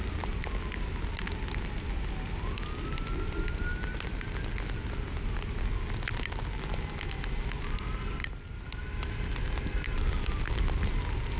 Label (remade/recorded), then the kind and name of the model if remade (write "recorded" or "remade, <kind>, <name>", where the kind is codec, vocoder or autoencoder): recorded